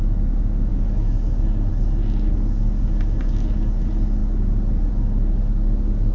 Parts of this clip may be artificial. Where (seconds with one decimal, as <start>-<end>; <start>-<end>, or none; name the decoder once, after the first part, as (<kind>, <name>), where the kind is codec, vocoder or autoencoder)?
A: none